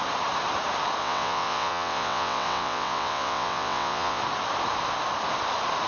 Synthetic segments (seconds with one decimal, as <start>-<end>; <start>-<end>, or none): 1.0-4.2